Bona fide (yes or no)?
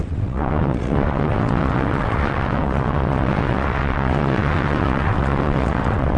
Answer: no